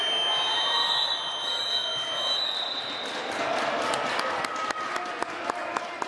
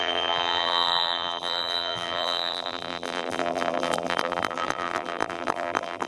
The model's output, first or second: second